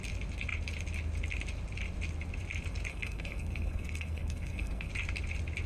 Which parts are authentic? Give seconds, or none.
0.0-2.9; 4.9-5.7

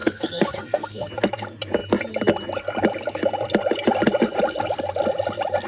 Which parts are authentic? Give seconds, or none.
1.1-5.7

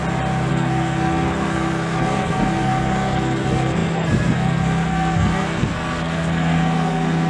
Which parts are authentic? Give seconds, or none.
0.0-0.5

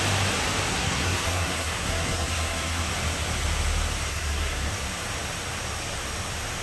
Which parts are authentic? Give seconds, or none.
0.0-0.7; 2.9-4.1; 4.7-6.6

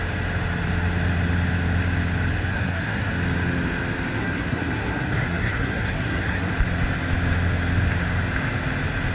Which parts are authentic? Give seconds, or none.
0.0-2.5; 3.1-4.2; 6.5-9.1

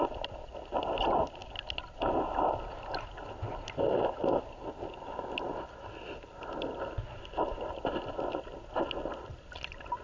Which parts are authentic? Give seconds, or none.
0.0-10.0